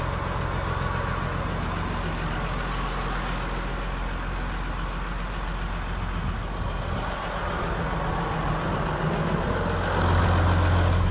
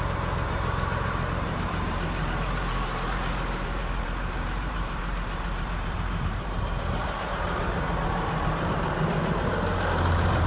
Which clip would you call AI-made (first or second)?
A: second